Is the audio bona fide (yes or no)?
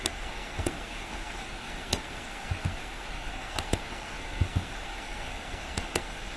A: no